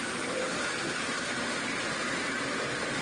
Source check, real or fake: real